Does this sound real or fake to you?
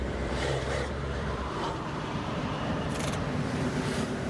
fake